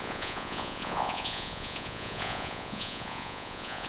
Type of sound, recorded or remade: remade